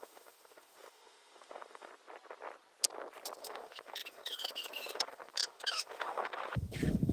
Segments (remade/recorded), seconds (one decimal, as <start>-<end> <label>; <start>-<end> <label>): 0.0-1.9 remade; 1.9-3.4 recorded; 3.4-7.1 remade